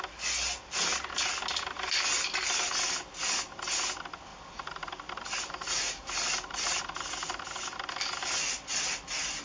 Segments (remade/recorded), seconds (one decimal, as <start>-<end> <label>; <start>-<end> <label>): 0.0-4.3 recorded; 4.3-6.8 remade; 6.8-9.4 recorded